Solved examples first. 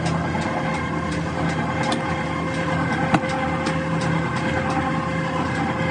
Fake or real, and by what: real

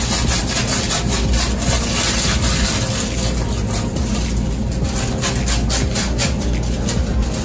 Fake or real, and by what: real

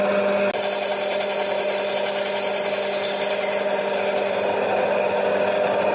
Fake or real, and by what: real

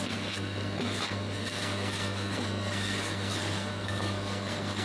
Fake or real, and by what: fake, codec, SNAC